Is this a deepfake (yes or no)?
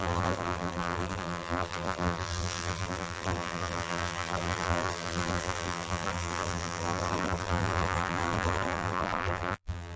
yes